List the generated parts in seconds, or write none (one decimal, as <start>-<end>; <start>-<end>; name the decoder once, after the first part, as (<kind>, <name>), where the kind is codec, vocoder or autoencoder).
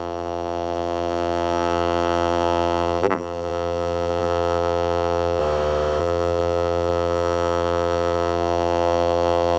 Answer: 0.0-5.4 (vocoder, BigVGAN v2); 6.0-9.6